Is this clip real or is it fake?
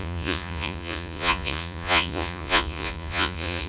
fake